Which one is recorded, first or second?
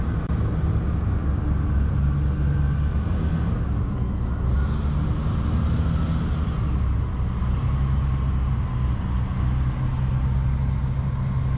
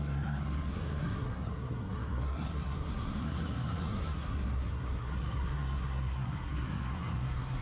first